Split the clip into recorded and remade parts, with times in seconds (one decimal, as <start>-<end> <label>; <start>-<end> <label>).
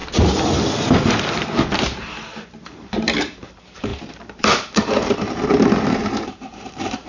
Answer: 0.0-2.4 recorded; 2.4-7.1 remade